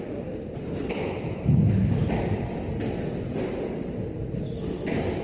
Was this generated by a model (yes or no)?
no